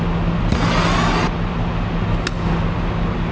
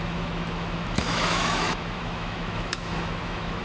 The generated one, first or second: second